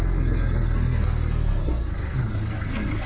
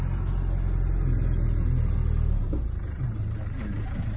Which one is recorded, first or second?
second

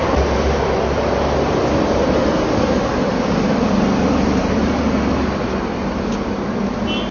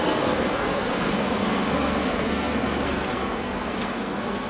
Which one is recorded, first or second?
first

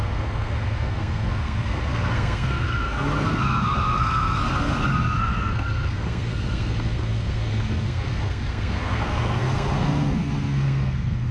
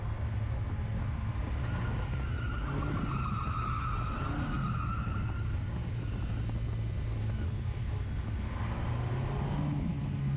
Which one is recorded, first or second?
second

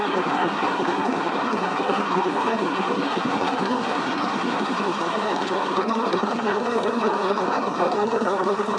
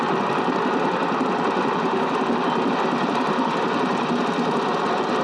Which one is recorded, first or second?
second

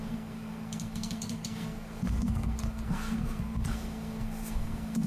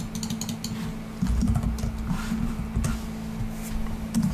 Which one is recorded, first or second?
second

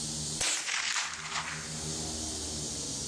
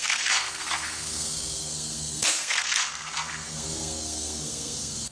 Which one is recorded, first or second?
first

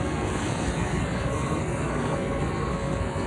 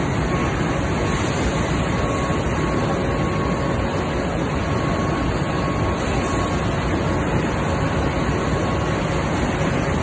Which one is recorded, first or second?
second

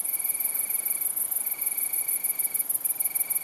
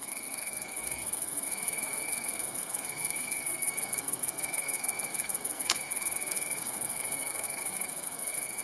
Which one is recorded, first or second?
first